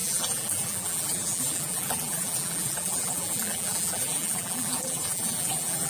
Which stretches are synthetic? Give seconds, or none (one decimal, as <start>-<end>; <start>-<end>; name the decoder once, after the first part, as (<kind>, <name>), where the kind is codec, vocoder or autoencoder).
0.0-5.9 (vocoder, BigVGAN v2)